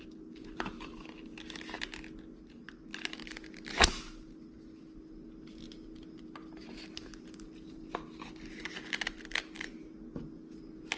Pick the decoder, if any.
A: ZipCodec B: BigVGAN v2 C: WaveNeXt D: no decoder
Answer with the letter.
D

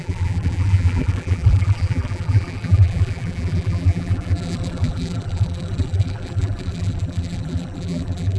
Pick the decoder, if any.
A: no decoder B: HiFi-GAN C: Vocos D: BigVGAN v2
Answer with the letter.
D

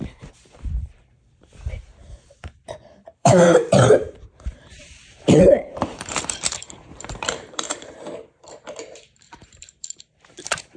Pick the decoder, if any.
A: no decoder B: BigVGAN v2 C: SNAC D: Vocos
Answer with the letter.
B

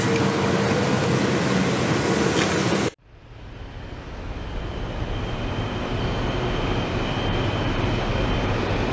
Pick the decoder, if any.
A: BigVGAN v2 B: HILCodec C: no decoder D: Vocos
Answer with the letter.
C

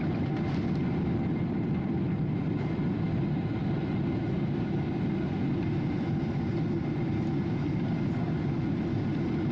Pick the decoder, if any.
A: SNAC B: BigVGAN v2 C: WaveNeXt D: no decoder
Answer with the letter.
D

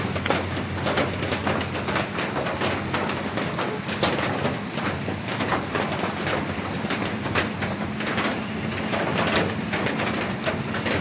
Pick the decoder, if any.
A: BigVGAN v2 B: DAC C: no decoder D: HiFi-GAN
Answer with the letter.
C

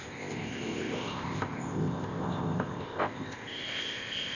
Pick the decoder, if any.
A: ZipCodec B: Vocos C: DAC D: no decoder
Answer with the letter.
A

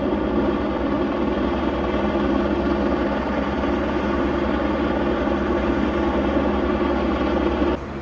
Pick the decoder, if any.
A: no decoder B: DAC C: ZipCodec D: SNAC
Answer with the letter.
A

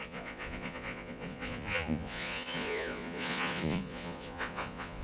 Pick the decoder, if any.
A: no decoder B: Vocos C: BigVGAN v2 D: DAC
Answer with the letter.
B